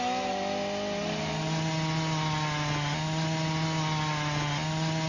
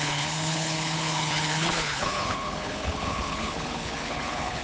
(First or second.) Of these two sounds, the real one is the first